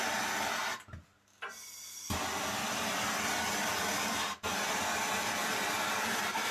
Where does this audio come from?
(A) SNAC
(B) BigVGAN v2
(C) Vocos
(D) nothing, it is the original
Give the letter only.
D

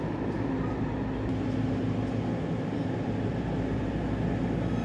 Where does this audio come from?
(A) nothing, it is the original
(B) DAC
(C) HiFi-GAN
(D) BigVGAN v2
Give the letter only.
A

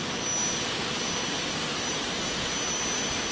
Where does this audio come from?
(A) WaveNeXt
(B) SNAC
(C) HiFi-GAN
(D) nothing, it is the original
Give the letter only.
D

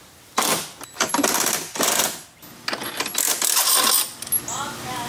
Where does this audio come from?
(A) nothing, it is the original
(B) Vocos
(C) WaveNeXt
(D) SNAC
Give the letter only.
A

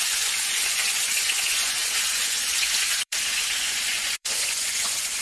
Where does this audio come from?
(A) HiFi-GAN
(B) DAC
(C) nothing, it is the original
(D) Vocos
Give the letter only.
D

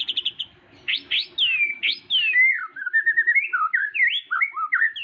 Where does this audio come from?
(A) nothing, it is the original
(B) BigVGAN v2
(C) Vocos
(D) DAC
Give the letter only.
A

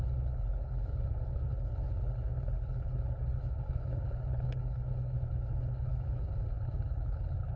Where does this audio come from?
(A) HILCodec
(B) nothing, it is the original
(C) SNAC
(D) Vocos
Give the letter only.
A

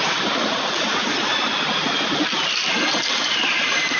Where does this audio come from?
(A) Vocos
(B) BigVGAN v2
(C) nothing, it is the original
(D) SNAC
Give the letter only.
C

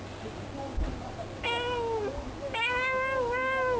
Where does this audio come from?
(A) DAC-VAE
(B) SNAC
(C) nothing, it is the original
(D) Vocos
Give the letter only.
C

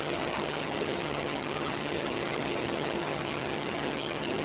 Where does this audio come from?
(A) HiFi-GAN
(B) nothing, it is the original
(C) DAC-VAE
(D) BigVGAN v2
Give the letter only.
A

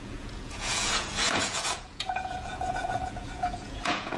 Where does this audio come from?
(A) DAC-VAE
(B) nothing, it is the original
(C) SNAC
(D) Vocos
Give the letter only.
D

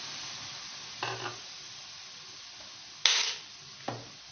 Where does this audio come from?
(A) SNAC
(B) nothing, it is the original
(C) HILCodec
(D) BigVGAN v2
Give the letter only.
B